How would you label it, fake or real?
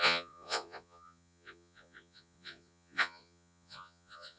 fake